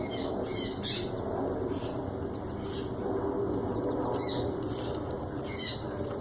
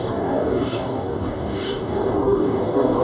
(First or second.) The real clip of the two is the first